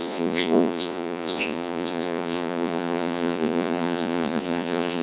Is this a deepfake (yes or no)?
yes